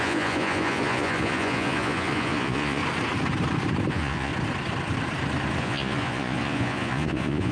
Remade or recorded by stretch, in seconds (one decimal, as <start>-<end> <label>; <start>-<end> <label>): 0.0-2.8 remade; 2.8-3.9 recorded; 3.9-4.3 remade; 4.3-5.6 recorded; 5.6-7.5 remade